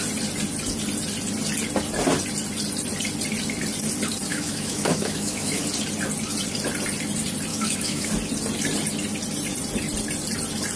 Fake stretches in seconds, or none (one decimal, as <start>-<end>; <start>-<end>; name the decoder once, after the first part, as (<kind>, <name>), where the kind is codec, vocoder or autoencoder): 4.3-5.6 (autoencoder, DAC-VAE); 7.5-8.1